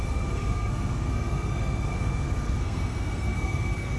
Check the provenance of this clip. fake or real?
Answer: fake